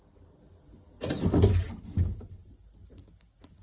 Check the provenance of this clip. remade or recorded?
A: recorded